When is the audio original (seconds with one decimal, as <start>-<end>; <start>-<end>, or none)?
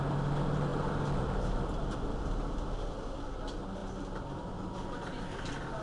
0.0-5.8